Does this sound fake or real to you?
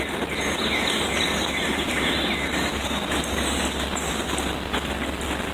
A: real